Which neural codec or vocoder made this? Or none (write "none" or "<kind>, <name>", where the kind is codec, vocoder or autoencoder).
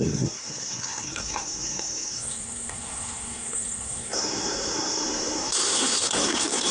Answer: codec, SNAC